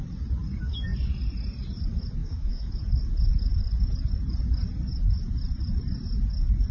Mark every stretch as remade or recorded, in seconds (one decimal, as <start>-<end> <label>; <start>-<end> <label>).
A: 0.0-2.2 recorded; 2.2-2.7 remade; 2.7-6.7 recorded